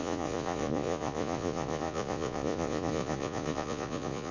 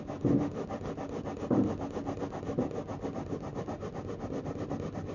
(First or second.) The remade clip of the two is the first